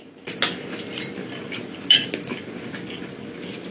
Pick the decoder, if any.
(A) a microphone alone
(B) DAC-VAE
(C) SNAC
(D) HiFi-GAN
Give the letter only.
A